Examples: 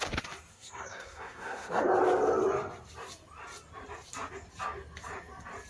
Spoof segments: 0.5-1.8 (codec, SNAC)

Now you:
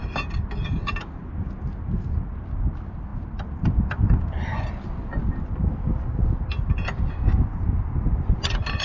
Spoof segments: none